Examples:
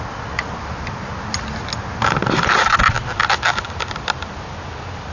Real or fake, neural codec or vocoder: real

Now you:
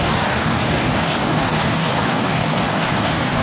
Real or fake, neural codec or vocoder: fake, codec, DAC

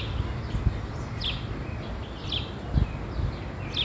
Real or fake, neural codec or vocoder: real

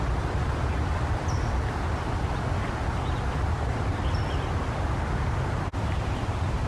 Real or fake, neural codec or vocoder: real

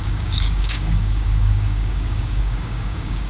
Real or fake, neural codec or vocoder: fake, codec, DAC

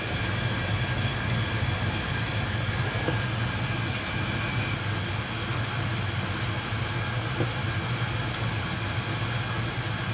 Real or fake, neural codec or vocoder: real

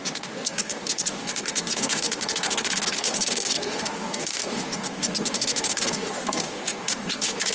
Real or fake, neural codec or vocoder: fake, codec, DAC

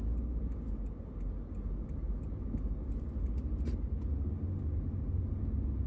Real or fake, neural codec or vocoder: real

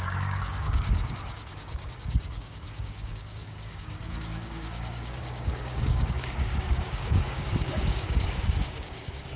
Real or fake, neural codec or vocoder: fake, codec, DAC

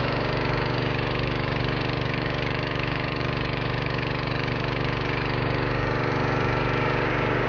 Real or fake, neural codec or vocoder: fake, codec, DAC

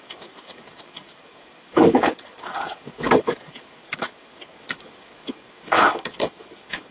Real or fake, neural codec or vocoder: fake, codec, DAC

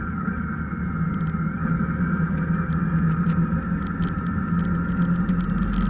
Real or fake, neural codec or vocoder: real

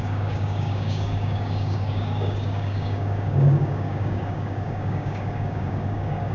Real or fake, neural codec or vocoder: fake, codec, DAC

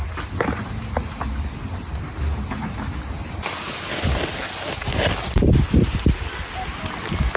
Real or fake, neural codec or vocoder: real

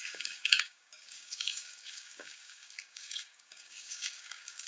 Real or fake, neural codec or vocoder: fake, codec, DAC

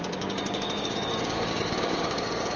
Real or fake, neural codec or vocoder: fake, codec, DAC